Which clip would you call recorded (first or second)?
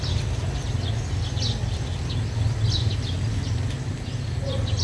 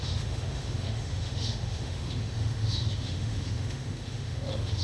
first